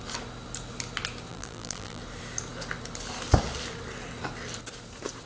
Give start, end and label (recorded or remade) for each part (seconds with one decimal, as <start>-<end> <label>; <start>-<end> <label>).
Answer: 0.0-1.3 recorded; 1.3-2.0 remade; 2.0-5.3 recorded